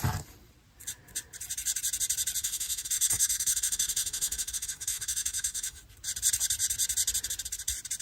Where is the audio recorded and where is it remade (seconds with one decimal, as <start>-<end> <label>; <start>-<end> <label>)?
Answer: 0.0-2.4 recorded; 2.4-5.8 remade; 5.8-8.0 recorded